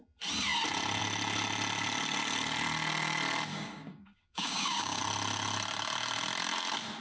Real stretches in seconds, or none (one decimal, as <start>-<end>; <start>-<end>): 0.0-3.5; 5.0-7.0